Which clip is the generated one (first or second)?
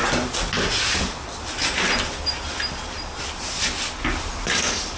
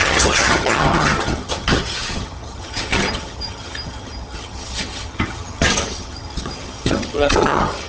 second